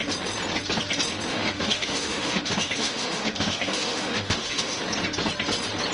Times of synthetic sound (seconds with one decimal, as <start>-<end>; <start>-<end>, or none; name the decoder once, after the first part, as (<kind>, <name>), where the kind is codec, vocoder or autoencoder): 1.3-4.8 (autoencoder, DAC-VAE)